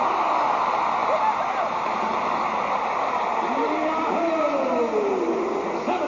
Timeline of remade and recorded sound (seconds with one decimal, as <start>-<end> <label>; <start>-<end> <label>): 0.0-1.0 recorded; 1.0-4.7 remade; 4.7-6.1 recorded